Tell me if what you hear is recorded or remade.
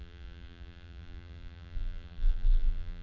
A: remade